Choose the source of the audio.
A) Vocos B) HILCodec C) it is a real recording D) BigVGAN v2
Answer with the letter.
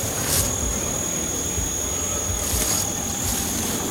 C